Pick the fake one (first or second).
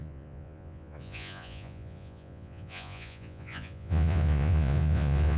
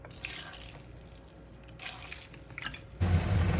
first